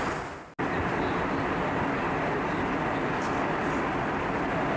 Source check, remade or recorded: recorded